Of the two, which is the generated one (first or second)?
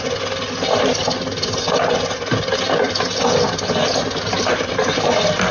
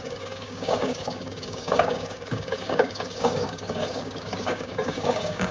second